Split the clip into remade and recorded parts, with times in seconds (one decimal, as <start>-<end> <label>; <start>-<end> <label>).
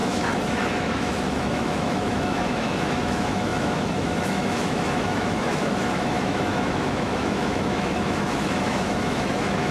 0.0-9.7 remade